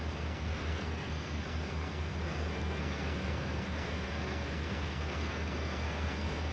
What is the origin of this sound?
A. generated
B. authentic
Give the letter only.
A